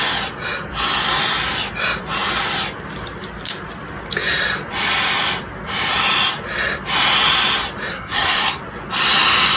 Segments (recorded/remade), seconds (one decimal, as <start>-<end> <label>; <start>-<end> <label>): 0.0-7.9 recorded; 7.9-8.6 remade; 8.6-9.6 recorded